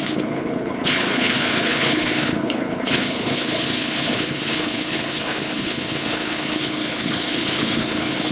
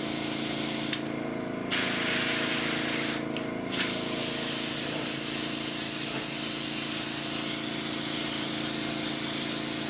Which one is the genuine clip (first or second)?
second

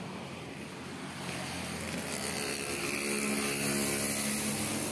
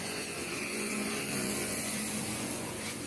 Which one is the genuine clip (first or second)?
first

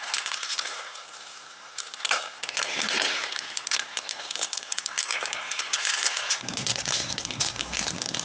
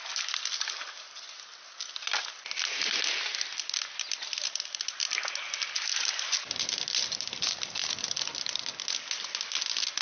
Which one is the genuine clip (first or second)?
second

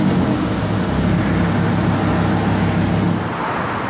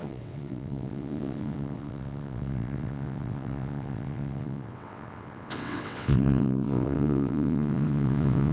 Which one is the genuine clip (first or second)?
first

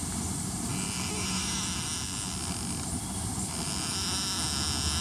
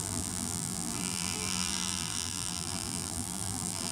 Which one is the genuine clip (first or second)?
first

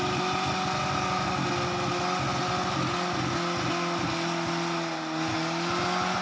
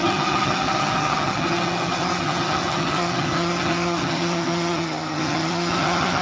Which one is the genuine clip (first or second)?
first